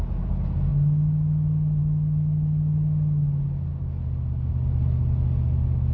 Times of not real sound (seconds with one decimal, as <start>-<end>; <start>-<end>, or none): none